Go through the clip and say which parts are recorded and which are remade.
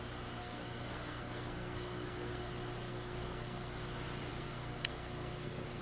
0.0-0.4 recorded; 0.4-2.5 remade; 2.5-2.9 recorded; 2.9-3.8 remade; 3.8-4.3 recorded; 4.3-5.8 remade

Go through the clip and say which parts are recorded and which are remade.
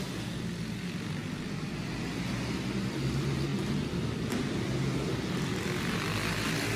0.0-6.8 recorded